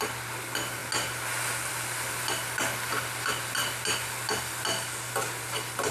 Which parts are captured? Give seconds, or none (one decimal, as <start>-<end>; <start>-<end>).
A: 0.0-5.9